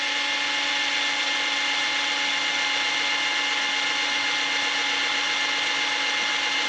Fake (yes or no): no